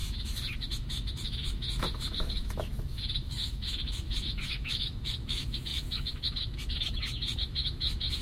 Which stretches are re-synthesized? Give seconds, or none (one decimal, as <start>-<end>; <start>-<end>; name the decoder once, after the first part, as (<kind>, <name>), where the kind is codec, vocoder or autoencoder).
0.0-8.2 (autoencoder, DAC-VAE)